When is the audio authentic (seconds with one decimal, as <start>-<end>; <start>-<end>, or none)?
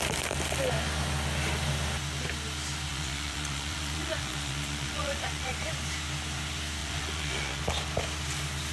0.0-2.9; 5.5-6.8; 7.6-8.7